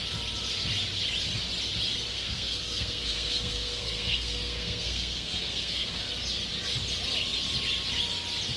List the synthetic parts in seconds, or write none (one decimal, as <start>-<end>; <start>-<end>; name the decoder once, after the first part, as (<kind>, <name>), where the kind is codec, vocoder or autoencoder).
2.1-6.1 (codec, SNAC)